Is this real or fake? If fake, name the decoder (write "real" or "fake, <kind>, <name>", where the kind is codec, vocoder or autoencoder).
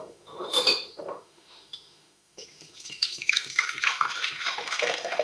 fake, autoencoder, DAC-VAE